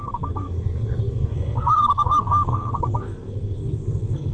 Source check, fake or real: fake